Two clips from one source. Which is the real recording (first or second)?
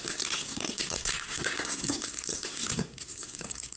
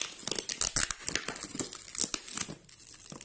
second